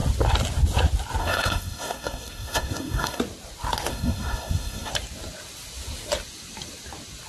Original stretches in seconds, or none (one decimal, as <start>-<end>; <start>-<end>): 0.0-1.2; 3.2-3.9; 4.9-7.3